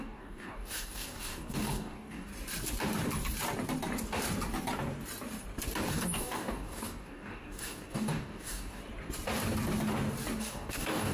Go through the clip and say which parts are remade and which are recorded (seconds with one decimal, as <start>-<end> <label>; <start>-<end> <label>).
0.0-2.3 remade; 2.3-5.9 recorded; 5.9-8.8 remade; 8.8-10.4 recorded; 10.4-11.1 remade